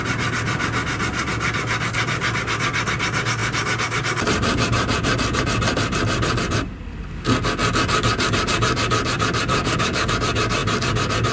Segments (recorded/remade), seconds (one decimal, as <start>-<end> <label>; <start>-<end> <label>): 0.0-9.5 recorded; 9.5-10.1 remade; 10.1-11.3 recorded